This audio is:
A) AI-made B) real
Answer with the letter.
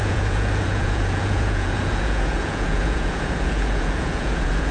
A